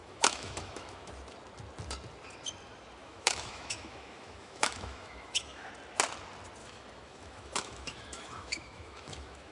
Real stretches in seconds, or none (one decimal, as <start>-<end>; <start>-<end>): 1.1-3.0; 5.7-6.6